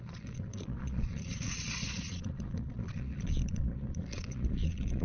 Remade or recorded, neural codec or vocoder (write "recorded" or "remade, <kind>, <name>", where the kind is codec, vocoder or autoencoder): remade, vocoder, Vocos